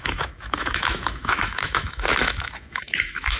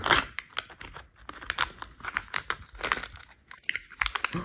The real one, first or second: second